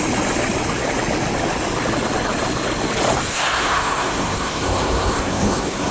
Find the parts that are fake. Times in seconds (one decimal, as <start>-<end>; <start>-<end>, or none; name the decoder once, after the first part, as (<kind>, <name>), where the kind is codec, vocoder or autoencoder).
3.3-5.9 (codec, SNAC)